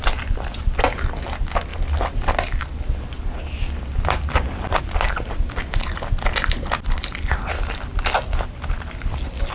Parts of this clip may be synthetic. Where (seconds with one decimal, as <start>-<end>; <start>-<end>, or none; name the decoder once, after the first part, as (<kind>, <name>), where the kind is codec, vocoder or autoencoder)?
none